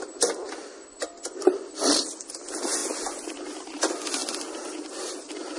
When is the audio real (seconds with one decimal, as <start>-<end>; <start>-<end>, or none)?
0.0-5.6